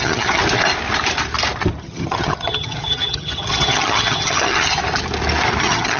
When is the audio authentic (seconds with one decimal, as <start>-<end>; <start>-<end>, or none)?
0.4-1.8; 4.8-5.6

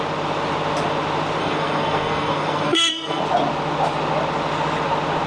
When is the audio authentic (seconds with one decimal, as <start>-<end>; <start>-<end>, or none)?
0.0-1.4; 3.2-5.3